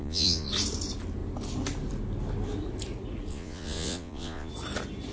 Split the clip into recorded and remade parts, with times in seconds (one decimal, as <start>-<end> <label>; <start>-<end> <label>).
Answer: 0.0-0.5 remade; 0.5-3.3 recorded; 3.3-4.5 remade; 4.5-5.1 recorded